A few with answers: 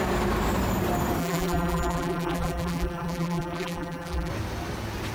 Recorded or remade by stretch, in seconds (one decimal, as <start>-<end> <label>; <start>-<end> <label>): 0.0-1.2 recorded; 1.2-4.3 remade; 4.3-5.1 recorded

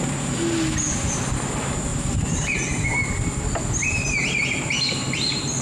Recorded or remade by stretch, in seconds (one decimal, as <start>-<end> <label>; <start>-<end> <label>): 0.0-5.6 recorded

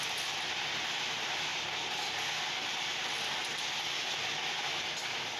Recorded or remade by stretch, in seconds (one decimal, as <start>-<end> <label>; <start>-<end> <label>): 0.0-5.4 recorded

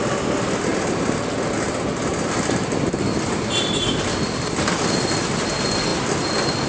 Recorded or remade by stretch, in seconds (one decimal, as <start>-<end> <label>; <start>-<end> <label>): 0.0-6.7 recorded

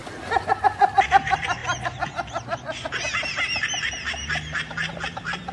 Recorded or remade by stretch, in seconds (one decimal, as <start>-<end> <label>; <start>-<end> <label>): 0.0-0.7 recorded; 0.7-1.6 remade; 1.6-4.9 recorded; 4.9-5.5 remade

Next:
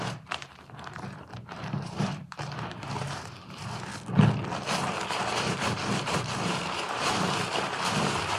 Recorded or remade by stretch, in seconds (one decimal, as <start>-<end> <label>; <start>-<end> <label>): 0.0-3.9 remade; 3.9-5.1 recorded; 5.1-8.4 remade

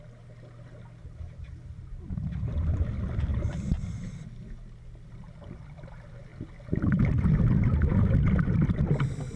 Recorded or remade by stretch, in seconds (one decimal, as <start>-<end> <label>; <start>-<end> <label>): 0.0-1.0 recorded; 1.0-2.8 remade; 2.8-3.3 recorded; 3.3-4.1 remade; 4.1-9.4 recorded